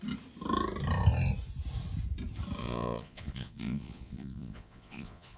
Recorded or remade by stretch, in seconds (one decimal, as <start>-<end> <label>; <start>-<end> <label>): 0.0-2.6 recorded; 2.6-5.4 remade